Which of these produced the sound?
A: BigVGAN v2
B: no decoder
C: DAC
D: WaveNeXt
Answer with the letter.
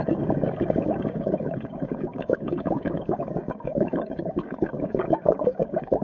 C